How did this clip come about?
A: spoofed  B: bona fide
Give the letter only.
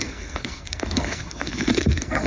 A